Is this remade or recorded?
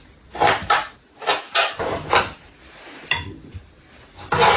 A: recorded